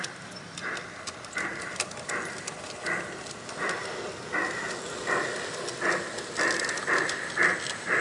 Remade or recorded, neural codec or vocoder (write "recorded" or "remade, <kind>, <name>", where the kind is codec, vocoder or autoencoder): recorded